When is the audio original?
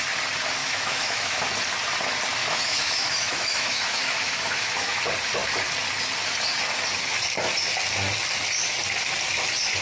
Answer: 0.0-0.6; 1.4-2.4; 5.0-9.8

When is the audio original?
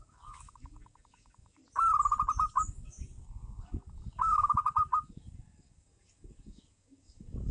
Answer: 1.6-2.5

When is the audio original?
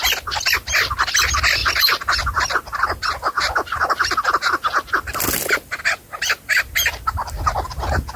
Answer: 0.0-8.2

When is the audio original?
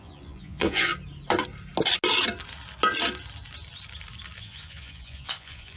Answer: 0.9-4.4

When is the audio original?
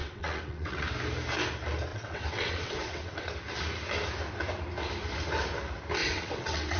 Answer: 0.9-1.9; 3.3-6.0